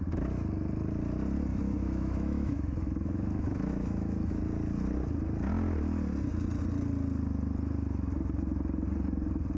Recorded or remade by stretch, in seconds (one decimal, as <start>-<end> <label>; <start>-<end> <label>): 0.0-1.5 recorded; 1.5-4.4 remade; 4.4-9.6 recorded